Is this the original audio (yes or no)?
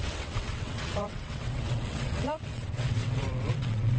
no